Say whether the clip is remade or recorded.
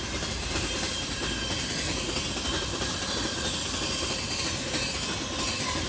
recorded